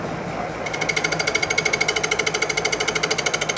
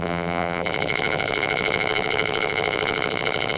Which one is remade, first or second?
second